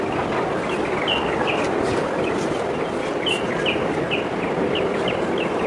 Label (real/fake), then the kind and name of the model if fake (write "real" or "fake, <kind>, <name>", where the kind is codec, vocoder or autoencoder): real